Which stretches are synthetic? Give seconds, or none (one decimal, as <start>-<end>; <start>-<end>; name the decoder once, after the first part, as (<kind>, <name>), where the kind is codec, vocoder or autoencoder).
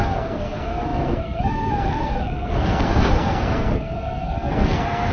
0.0-5.1 (codec, SNAC)